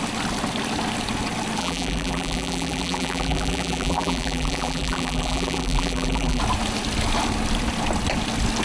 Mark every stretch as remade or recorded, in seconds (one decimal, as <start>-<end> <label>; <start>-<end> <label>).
0.0-1.6 recorded; 1.6-6.4 remade; 6.4-8.6 recorded